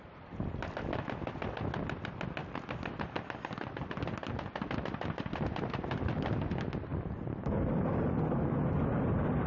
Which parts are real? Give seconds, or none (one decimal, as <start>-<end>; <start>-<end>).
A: 0.0-9.5